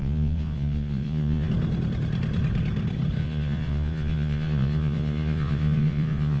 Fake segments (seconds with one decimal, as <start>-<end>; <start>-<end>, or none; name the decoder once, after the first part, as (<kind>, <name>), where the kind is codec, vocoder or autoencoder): 0.0-1.5 (vocoder, Vocos); 3.2-6.4